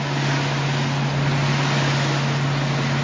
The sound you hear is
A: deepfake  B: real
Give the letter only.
B